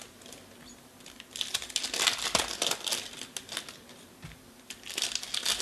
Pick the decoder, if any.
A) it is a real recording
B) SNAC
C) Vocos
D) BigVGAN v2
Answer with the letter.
A